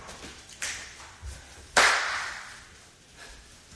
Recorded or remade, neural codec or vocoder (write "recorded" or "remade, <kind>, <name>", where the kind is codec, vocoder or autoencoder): recorded